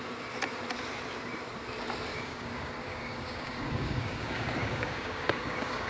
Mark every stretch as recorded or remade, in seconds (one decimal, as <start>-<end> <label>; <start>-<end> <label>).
0.0-2.1 recorded; 2.1-5.9 remade